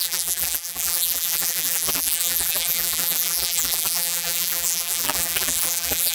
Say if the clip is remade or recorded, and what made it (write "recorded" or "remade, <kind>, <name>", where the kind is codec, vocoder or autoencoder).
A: remade, vocoder, BigVGAN v2